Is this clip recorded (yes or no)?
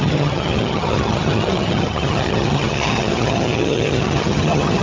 no